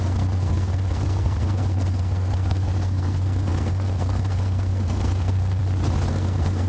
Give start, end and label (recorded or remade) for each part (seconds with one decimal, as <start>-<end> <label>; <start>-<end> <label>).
0.0-5.6 remade; 5.6-6.1 recorded; 6.1-6.7 remade